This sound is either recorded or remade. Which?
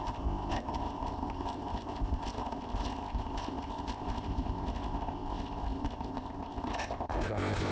remade